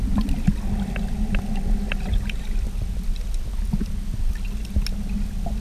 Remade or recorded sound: recorded